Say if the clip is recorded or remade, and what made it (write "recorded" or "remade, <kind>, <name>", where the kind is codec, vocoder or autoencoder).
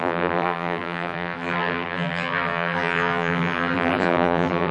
remade, vocoder, BigVGAN v2